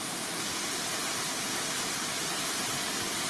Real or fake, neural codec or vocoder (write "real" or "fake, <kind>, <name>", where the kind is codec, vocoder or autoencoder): real